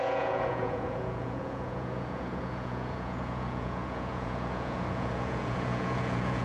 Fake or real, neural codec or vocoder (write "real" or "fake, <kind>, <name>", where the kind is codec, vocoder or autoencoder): fake, vocoder, Vocos